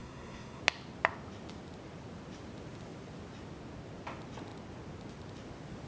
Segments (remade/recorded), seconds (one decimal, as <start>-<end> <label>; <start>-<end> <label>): 0.0-0.6 remade; 0.6-5.9 recorded